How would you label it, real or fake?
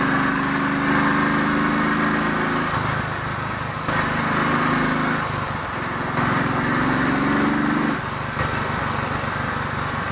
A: real